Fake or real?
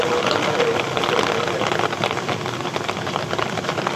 real